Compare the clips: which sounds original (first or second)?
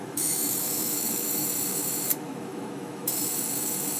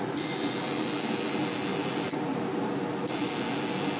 second